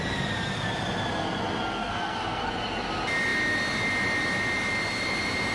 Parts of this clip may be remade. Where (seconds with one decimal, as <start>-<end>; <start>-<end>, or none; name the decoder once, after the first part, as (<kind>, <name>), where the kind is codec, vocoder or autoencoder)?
1.8-2.5 (codec, SNAC)